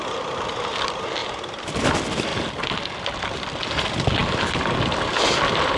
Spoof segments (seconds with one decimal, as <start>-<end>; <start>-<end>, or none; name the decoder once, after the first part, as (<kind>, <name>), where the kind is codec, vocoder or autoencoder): 1.2-1.8 (vocoder, BigVGAN v2)

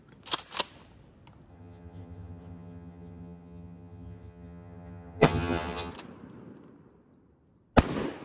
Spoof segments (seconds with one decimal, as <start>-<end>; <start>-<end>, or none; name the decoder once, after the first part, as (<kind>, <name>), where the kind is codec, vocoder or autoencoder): 1.5-5.9 (vocoder, HiFi-GAN)

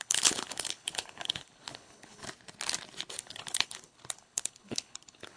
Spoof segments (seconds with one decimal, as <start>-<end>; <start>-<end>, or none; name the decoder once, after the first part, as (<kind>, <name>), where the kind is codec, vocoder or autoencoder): 0.0-2.2 (codec, HILCodec); 3.1-5.4

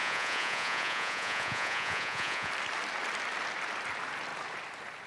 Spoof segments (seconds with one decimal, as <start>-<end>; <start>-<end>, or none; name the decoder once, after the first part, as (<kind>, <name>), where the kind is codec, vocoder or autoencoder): 0.0-2.5 (vocoder, Vocos)

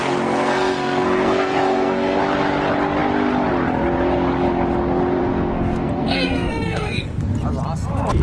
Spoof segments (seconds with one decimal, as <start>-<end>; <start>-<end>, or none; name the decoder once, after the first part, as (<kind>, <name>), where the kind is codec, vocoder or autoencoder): 0.0-2.2 (codec, SNAC); 5.2-7.2

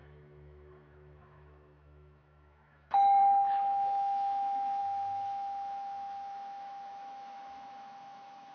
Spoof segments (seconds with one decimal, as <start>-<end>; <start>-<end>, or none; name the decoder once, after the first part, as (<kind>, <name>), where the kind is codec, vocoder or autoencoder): 0.0-8.5 (autoencoder, DAC-VAE)

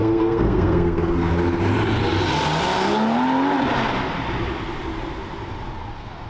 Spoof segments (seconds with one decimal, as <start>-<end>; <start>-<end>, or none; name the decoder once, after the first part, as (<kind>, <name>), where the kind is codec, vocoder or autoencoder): 0.0-1.3 (codec, SNAC)